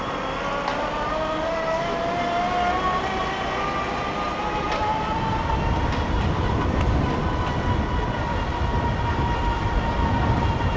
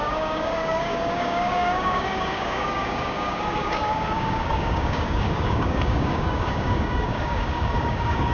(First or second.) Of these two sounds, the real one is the first